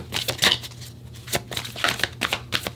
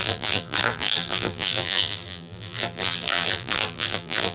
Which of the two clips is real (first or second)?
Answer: first